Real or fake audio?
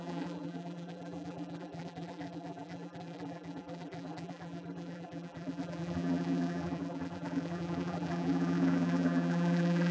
fake